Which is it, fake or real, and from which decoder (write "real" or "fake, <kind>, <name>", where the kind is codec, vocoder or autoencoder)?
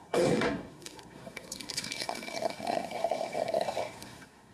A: fake, codec, SNAC